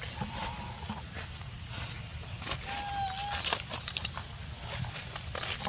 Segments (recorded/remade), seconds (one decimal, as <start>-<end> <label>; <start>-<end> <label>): 0.0-5.7 recorded